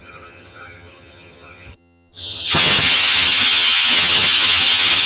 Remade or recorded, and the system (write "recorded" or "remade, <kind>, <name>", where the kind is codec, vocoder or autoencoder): remade, vocoder, HiFi-GAN